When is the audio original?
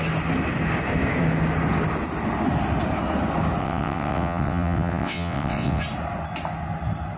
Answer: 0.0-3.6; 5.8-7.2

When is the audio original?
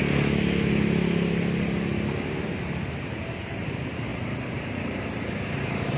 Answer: 0.0-3.6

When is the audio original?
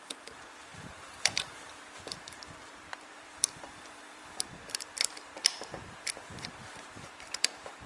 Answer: none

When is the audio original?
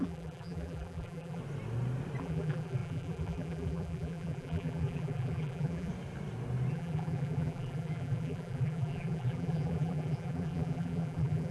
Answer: 1.4-2.2; 5.9-6.7